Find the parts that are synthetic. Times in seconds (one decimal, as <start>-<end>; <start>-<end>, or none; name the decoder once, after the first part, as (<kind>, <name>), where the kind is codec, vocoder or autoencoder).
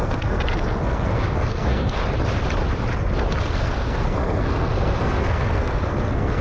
0.0-2.0 (codec, SNAC); 3.4-6.4